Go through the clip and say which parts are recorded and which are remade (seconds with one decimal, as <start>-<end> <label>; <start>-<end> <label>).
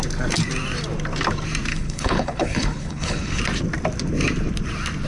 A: 0.0-1.7 recorded; 1.7-3.4 remade; 3.4-5.1 recorded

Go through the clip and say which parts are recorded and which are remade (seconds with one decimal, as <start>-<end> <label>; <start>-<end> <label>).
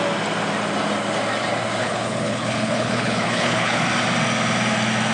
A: 0.0-1.8 recorded; 1.8-3.8 remade; 3.8-5.1 recorded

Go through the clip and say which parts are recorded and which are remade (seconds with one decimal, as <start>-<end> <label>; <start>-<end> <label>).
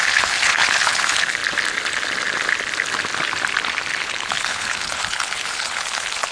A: 0.0-1.4 remade; 1.4-4.0 recorded; 4.0-6.3 remade